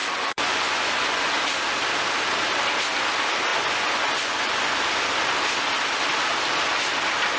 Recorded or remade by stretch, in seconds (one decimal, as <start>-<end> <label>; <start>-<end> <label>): 0.0-1.3 remade; 1.3-3.5 recorded; 3.5-4.7 remade; 4.7-7.4 recorded